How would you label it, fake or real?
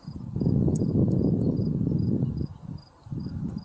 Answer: real